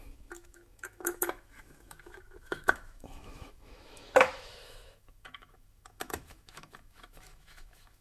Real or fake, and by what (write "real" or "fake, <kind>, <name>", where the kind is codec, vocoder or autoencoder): fake, autoencoder, DAC-VAE